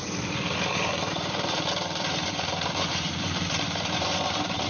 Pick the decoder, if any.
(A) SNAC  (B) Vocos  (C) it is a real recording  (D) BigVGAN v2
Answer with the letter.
D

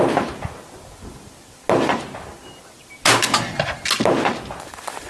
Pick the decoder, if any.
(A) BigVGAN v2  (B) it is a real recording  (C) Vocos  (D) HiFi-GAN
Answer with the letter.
B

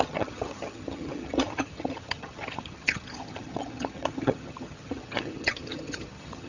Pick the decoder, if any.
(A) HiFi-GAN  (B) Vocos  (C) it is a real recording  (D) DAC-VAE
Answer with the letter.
A